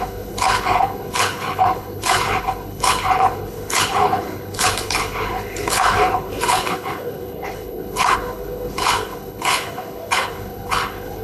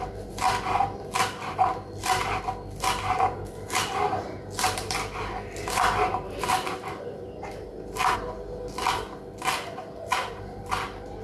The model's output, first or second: first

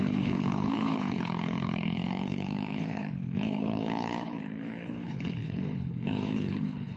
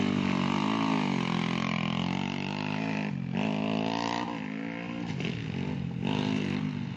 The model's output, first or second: first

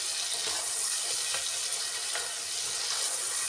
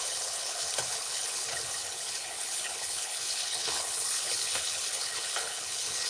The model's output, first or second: second